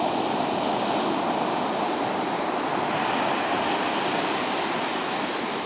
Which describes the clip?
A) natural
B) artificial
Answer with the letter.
A